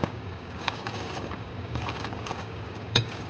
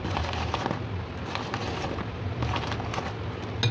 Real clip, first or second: second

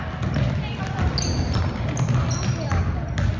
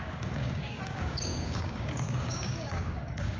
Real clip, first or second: first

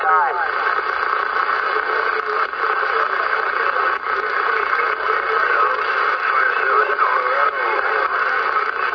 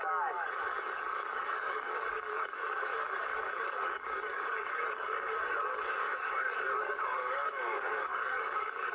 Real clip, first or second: first